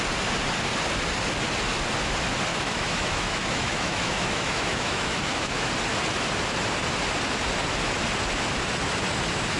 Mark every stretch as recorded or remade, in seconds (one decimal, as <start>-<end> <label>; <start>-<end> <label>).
0.0-2.5 recorded; 2.5-5.7 remade; 5.7-9.6 recorded